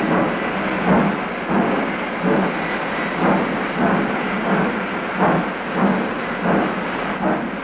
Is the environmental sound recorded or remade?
recorded